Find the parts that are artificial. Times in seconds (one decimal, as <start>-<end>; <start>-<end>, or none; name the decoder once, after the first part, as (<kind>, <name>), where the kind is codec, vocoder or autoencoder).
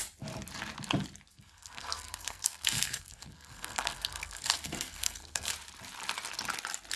1.3-5.5 (codec, SNAC)